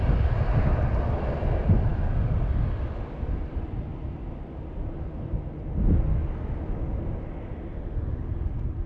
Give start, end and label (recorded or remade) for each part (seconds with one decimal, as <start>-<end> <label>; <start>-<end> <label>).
0.0-8.9 recorded